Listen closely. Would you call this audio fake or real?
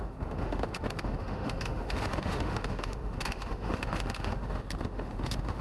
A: fake